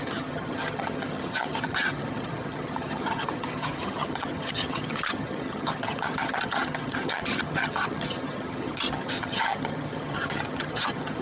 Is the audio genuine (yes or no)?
no